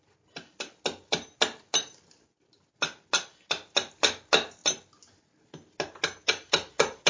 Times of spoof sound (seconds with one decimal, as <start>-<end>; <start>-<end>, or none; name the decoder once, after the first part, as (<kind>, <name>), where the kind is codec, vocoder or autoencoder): none